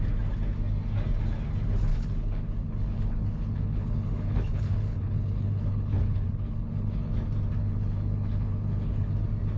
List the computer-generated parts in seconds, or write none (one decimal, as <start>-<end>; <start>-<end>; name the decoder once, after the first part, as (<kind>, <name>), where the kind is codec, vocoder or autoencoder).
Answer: 1.9-7.1 (codec, HILCodec); 7.6-9.1